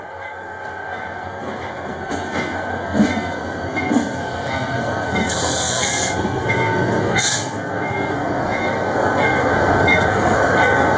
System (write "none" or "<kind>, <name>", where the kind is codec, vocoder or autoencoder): codec, SNAC